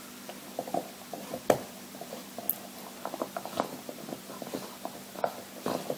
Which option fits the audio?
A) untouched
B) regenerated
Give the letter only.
A